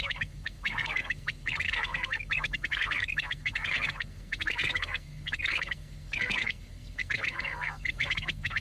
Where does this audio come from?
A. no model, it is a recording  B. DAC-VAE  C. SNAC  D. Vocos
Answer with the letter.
C